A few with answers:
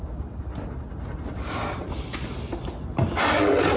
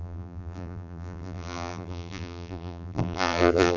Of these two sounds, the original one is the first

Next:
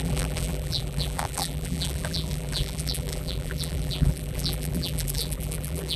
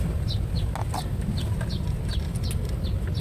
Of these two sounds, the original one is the second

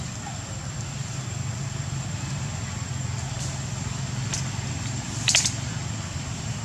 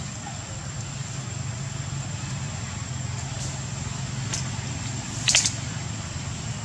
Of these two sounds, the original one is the second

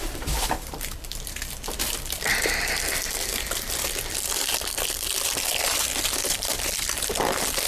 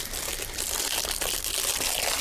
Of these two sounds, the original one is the second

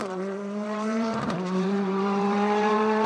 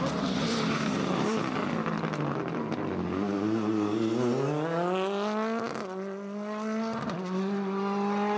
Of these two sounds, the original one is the second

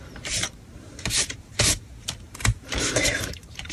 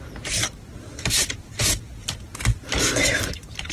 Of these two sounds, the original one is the second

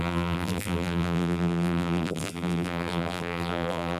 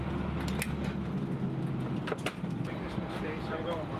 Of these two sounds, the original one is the second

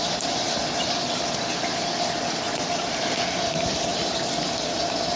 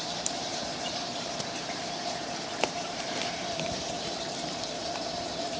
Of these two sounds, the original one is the first